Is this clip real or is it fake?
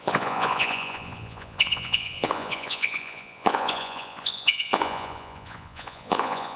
fake